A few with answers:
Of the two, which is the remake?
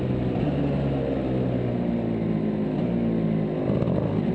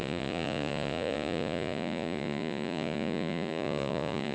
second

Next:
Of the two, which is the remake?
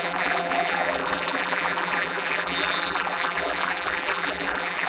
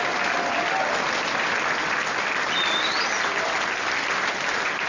first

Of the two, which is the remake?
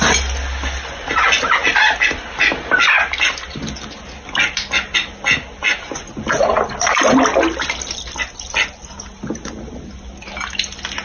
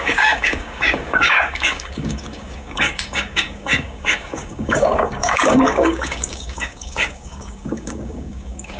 second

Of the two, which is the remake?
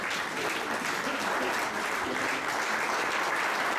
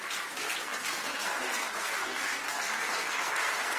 second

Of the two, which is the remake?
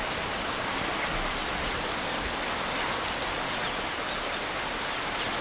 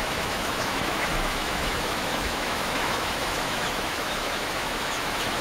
second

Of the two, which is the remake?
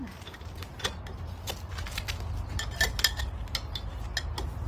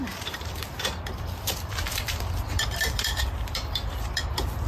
second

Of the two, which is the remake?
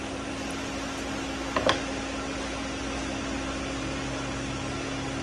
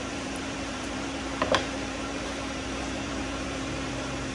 second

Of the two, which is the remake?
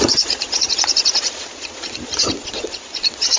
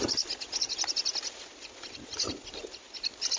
first